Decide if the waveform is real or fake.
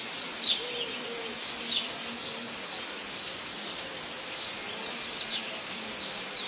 real